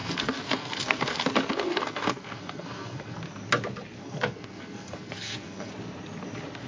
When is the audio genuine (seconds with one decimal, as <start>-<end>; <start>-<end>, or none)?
3.2-4.0; 5.7-6.7